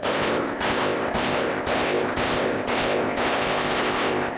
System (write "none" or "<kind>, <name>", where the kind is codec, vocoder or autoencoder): codec, ZipCodec